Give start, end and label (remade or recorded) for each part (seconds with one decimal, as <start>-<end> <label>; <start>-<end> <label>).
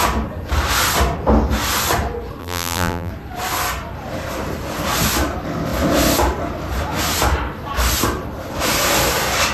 0.0-2.4 recorded; 2.4-3.1 remade; 3.1-9.5 recorded